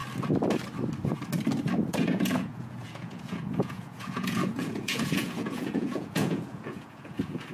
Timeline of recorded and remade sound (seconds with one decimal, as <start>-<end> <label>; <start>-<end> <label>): 0.0-1.9 recorded; 1.9-7.5 remade